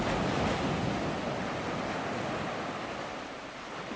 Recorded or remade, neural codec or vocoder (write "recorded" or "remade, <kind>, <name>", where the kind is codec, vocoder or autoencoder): recorded